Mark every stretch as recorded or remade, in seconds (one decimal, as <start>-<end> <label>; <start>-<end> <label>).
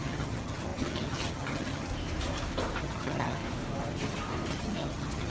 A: 0.0-1.9 remade; 1.9-2.8 recorded; 2.8-3.4 remade; 3.4-4.5 recorded; 4.5-5.3 remade